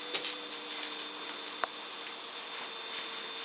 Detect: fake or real real